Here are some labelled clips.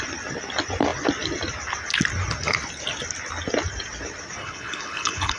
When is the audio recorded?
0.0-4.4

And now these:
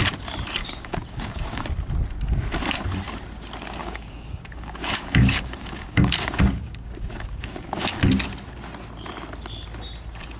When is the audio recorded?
0.0-0.6; 1.7-3.8; 8.0-10.4

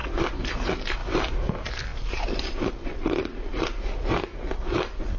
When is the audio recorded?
0.0-1.0; 1.5-5.2